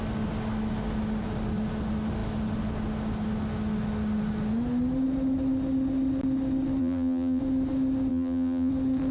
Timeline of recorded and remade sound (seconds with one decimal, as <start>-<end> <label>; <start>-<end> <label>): 0.0-6.8 recorded; 6.8-7.4 remade; 7.4-8.1 recorded; 8.1-8.7 remade; 8.7-9.1 recorded